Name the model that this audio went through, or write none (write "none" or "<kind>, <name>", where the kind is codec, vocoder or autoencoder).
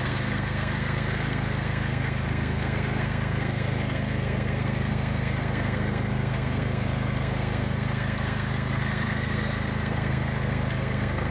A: codec, SNAC